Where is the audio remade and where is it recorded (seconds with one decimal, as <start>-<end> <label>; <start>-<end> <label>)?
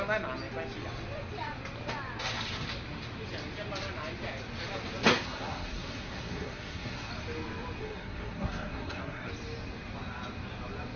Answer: 0.0-5.1 recorded; 5.1-7.1 remade; 7.1-7.8 recorded; 7.8-9.3 remade; 9.3-11.0 recorded